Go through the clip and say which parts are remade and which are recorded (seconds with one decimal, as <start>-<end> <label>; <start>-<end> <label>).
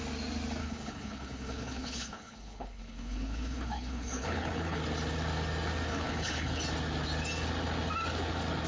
0.0-0.6 recorded; 0.6-4.8 remade; 4.8-5.9 recorded; 5.9-6.6 remade; 6.6-8.7 recorded